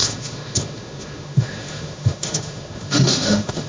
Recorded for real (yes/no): no